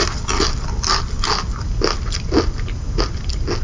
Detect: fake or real real